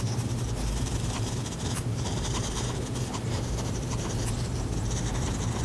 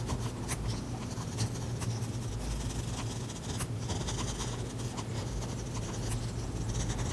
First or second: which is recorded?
second